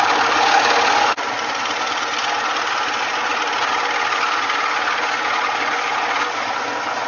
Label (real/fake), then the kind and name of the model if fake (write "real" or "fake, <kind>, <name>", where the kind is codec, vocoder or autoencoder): real